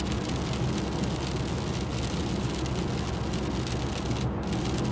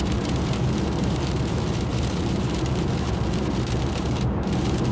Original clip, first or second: first